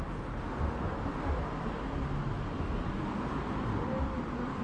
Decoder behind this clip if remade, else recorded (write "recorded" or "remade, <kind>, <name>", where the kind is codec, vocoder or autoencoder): recorded